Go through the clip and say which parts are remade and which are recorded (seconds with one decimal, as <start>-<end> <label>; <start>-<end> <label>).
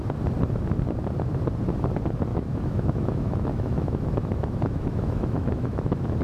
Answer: 0.0-2.3 recorded; 2.3-6.2 remade